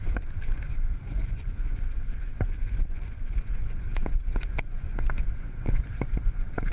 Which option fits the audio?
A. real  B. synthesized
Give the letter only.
B